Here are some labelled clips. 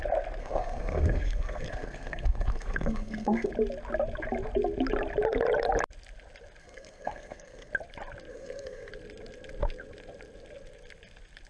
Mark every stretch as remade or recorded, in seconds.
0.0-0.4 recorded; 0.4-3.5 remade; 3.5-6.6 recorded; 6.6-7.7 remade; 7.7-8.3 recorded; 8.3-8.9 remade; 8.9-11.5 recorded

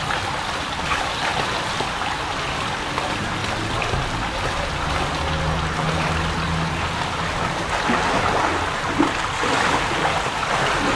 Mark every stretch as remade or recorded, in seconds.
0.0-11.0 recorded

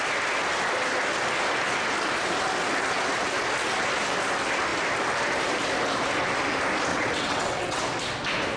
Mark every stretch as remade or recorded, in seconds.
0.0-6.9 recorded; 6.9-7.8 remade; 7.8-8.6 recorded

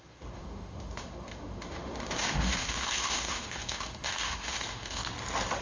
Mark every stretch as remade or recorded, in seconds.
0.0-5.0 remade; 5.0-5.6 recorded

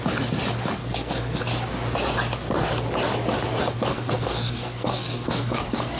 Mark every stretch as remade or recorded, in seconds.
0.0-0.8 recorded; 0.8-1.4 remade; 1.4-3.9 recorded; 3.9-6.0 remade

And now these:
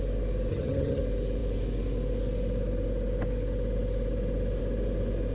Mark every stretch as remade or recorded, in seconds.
0.0-0.5 recorded; 0.5-1.0 remade; 1.0-5.3 recorded

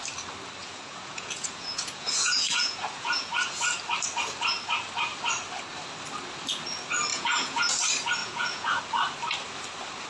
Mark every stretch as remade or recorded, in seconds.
0.0-0.6 recorded; 0.6-3.3 remade; 3.3-7.1 recorded; 7.1-7.7 remade; 7.7-8.2 recorded; 8.2-8.8 remade; 8.8-10.1 recorded

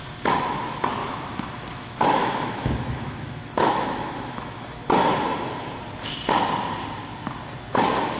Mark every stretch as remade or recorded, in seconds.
0.0-1.0 recorded; 1.0-4.8 remade; 4.8-8.2 recorded